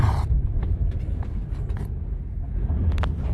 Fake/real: real